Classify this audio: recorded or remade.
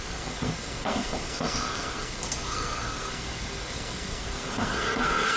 remade